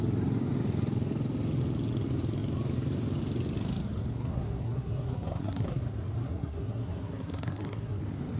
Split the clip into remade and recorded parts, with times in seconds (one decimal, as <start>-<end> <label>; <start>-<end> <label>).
0.0-4.1 recorded; 4.1-5.8 remade; 5.8-6.2 recorded; 6.2-8.0 remade; 8.0-8.4 recorded